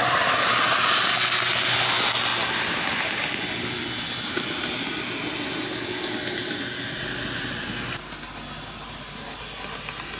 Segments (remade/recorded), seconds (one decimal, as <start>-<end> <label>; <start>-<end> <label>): 0.0-10.2 recorded

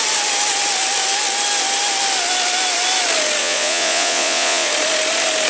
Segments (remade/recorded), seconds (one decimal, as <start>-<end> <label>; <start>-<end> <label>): 0.0-3.4 recorded; 3.4-4.7 remade; 4.7-5.5 recorded